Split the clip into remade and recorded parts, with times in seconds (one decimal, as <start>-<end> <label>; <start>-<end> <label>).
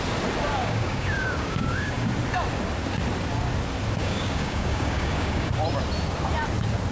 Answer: 0.0-0.6 recorded; 0.6-2.1 remade; 2.1-4.0 recorded; 4.0-5.5 remade; 5.5-6.9 recorded